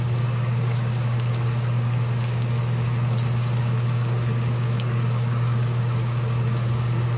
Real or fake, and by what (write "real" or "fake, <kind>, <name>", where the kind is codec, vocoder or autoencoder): fake, codec, DAC